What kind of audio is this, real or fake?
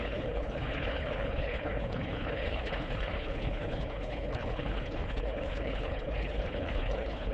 fake